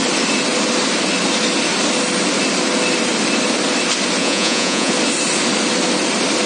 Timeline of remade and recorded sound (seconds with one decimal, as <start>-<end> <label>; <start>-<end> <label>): 0.0-4.2 recorded; 4.2-4.9 remade; 4.9-6.5 recorded